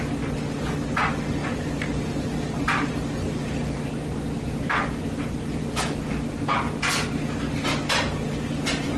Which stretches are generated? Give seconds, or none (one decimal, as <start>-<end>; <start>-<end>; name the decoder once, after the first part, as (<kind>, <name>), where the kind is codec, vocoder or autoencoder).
1.4-3.9 (vocoder, BigVGAN v2)